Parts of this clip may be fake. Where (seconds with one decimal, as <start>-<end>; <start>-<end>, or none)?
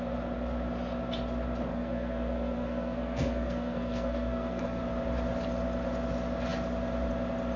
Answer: 1.7-4.8